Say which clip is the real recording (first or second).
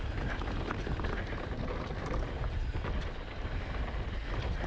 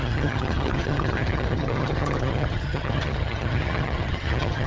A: first